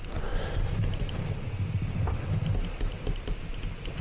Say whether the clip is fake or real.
real